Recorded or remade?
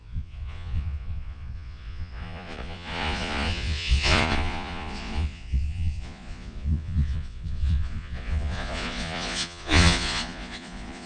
remade